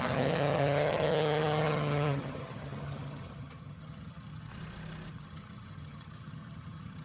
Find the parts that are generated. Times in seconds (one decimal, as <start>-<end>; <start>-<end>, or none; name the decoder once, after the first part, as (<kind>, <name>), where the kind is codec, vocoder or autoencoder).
0.0-4.5 (vocoder, HiFi-GAN); 5.1-7.0